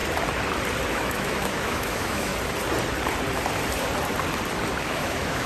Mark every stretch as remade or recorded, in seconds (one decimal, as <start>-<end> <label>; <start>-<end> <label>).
0.0-0.9 recorded; 0.9-2.3 remade; 2.3-4.8 recorded; 4.8-5.5 remade